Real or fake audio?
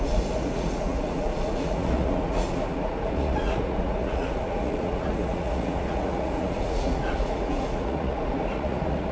fake